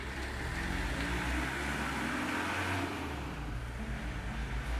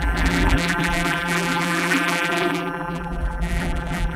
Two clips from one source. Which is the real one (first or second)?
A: first